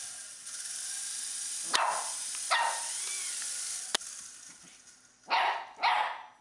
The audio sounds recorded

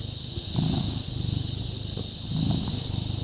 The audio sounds recorded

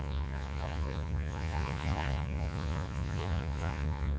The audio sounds remade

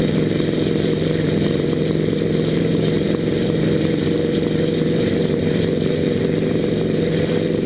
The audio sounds remade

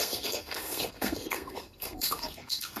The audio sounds remade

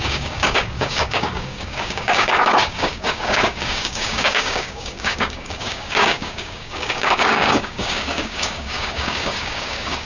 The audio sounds remade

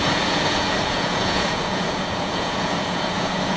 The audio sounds remade